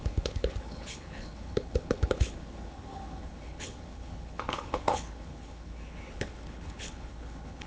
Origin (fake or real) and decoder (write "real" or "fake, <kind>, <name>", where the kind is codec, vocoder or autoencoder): fake, codec, HILCodec